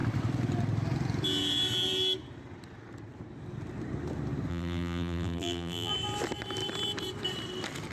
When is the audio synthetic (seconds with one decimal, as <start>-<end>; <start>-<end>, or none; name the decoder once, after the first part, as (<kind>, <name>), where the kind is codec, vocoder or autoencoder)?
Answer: 4.5-5.9 (vocoder, BigVGAN v2)